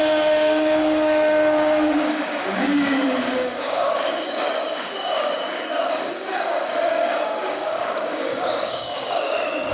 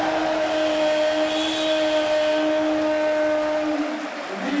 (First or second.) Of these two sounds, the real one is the second